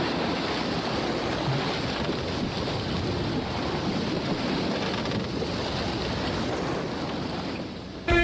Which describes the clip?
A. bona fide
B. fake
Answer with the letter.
A